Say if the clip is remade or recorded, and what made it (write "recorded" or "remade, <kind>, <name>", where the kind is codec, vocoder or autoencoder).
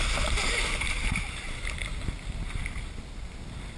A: recorded